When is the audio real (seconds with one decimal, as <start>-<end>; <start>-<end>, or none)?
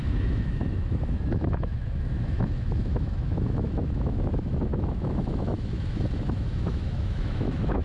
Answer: none